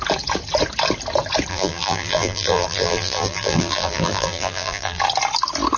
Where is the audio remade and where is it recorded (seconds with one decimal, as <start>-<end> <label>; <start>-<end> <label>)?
0.0-1.5 recorded; 1.5-5.0 remade; 5.0-5.8 recorded